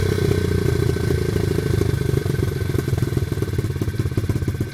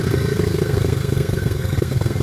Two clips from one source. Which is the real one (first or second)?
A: first